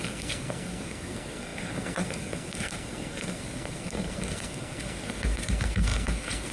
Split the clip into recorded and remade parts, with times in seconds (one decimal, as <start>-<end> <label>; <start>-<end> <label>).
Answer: 0.0-6.5 remade